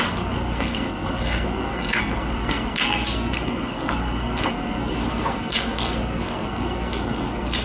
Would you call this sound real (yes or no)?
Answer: no